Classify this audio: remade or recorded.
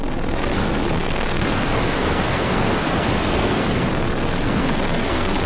remade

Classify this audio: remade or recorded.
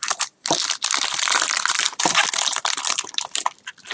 remade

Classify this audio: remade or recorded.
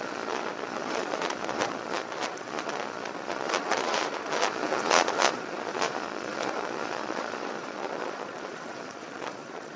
remade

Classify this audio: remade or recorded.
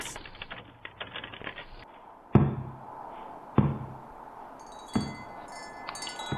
recorded